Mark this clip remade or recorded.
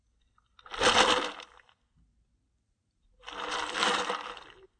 recorded